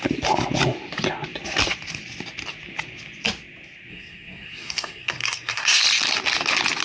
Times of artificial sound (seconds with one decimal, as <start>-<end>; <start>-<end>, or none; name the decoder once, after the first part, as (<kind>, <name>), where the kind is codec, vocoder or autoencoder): 3.9-5.8 (codec, SNAC)